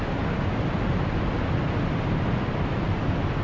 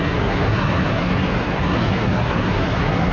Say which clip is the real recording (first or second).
first